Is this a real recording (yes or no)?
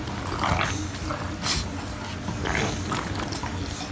yes